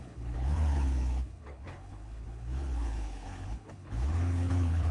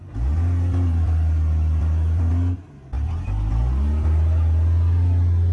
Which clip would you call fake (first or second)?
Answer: first